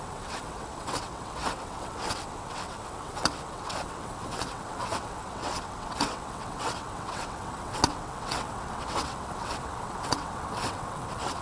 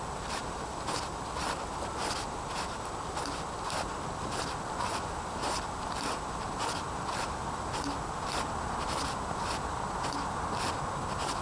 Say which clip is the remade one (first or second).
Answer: first